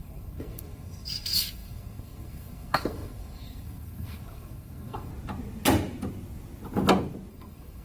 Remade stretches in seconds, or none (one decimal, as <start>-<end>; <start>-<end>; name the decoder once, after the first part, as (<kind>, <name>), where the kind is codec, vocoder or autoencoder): 0.0-5.1 (codec, SNAC); 7.3-7.8